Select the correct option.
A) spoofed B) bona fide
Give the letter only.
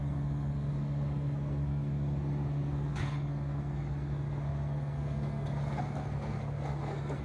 A